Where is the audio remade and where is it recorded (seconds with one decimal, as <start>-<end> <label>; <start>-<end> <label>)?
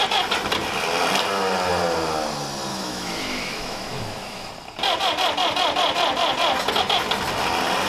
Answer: 0.0-2.7 recorded; 2.7-4.5 remade; 4.5-7.9 recorded